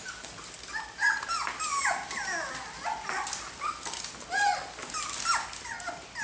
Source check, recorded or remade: recorded